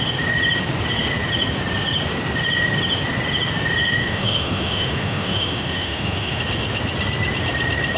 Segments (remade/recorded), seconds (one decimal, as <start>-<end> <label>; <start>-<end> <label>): 0.0-4.0 recorded; 4.0-6.4 remade; 6.4-8.0 recorded